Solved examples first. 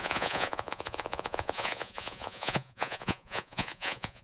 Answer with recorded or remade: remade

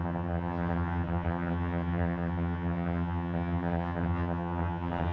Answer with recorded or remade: remade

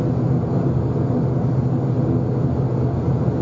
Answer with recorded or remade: recorded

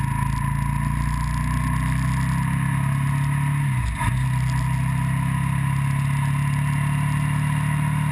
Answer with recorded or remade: recorded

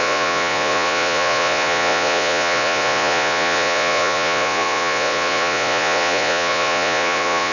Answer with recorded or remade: remade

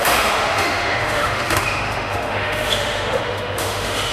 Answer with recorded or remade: remade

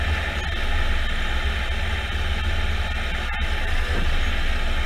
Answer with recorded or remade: recorded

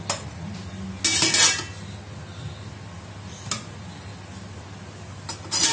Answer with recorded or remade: recorded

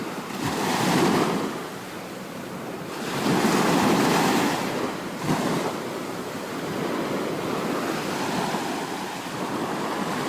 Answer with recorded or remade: recorded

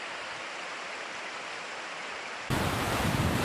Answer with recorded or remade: remade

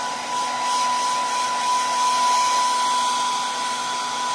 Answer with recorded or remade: recorded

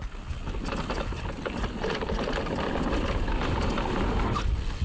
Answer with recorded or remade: recorded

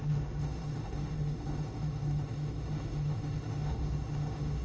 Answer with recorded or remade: remade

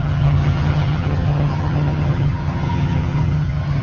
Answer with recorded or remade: remade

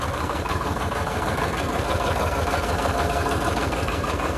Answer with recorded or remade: remade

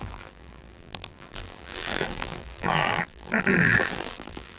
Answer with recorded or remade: remade